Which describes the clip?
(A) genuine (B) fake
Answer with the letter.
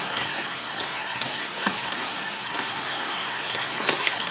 B